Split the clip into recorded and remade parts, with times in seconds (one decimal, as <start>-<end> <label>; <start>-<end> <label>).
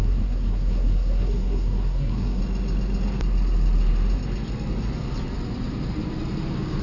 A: 0.0-2.4 remade; 2.4-6.8 recorded